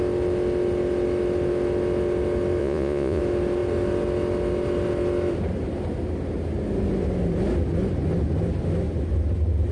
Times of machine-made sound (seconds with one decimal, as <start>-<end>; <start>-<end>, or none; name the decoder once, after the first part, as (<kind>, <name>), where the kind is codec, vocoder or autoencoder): 2.6-3.2 (vocoder, Vocos)